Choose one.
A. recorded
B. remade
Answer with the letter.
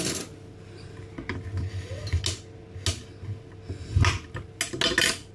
A